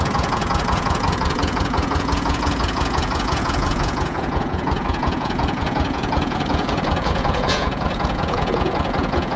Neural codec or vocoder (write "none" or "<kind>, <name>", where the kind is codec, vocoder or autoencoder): vocoder, Vocos